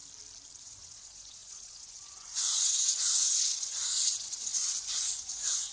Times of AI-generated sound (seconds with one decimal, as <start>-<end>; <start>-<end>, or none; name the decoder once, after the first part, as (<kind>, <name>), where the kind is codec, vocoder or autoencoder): 0.6-5.7 (vocoder, Vocos)